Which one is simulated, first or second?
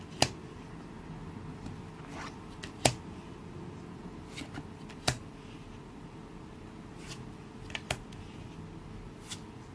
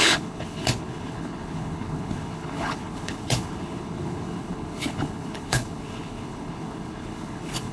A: second